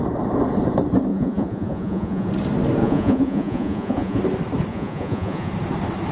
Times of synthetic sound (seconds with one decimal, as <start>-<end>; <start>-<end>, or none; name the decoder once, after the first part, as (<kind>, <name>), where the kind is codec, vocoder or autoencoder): 1.1-2.3 (vocoder, Vocos); 2.8-4.2; 4.7-5.5

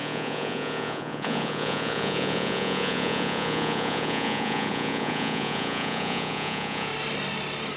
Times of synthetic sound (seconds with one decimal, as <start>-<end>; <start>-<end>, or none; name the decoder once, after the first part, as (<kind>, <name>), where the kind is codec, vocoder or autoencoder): 0.0-6.9 (vocoder, Vocos)

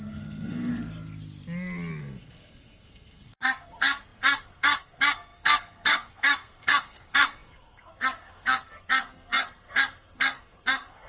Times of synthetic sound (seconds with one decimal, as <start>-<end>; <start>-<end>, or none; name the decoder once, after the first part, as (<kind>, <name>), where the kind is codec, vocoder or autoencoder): 0.0-0.7 (codec, SNAC); 2.0-11.1

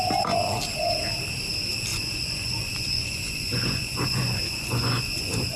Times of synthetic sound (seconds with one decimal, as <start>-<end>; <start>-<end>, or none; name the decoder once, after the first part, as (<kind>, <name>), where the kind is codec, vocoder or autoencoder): 1.9-5.6 (vocoder, Vocos)

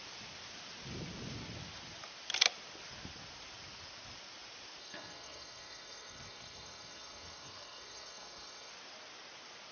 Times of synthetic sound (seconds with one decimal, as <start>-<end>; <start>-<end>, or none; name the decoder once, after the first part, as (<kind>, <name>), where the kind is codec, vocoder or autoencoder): 4.8-8.7 (codec, SNAC)

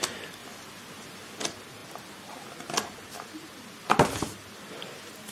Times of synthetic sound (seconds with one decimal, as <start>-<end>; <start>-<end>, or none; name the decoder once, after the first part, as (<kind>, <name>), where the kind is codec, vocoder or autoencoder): none